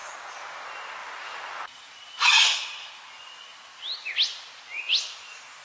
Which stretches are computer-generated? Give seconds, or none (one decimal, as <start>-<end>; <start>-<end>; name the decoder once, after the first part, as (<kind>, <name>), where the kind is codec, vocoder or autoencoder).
none